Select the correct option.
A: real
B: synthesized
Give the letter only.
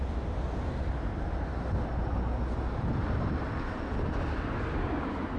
A